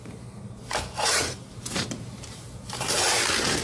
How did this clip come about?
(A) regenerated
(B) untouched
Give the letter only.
A